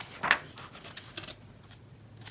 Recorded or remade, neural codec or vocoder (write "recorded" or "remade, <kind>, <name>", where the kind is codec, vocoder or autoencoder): recorded